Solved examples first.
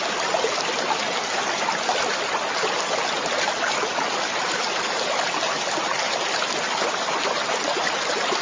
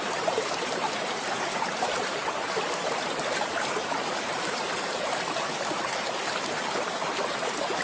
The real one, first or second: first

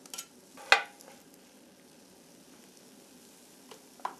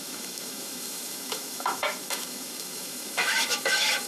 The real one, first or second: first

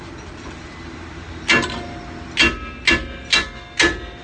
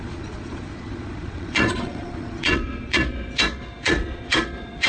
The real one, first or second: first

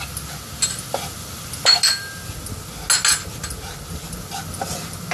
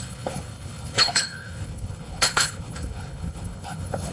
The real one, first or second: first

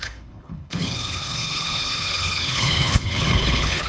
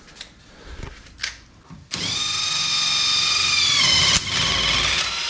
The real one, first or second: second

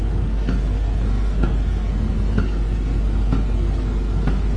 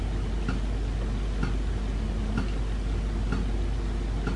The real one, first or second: second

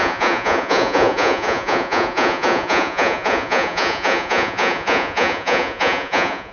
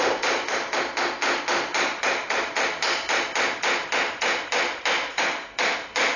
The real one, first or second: second